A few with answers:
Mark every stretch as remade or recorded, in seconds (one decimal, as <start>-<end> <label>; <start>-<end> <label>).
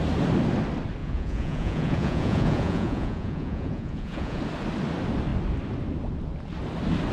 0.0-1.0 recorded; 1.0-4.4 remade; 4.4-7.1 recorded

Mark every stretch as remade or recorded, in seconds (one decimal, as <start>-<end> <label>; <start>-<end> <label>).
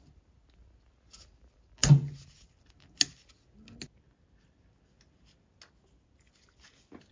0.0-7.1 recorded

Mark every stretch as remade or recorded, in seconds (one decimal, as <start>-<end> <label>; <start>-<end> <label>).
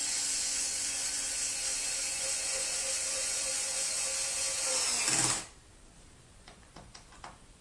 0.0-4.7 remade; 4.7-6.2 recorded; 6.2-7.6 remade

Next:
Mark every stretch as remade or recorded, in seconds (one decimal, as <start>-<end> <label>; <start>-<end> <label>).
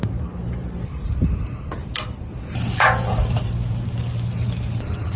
0.0-5.2 recorded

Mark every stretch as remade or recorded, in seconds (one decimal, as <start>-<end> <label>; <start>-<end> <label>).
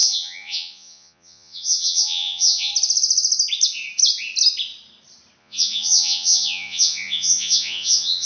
0.0-2.7 remade; 2.7-5.4 recorded; 5.4-8.3 remade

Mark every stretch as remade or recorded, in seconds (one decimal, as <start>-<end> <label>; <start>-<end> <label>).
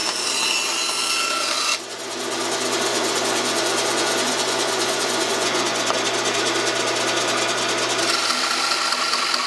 0.0-2.9 recorded; 2.9-5.9 remade; 5.9-9.5 recorded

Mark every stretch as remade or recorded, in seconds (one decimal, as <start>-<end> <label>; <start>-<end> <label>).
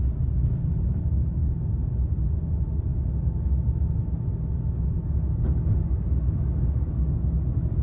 0.0-7.8 recorded